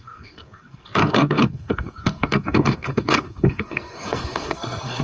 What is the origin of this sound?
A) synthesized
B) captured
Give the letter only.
A